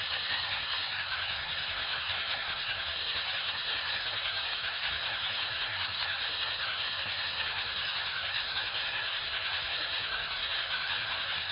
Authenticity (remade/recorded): remade